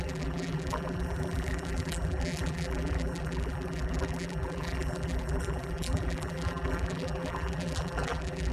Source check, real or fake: fake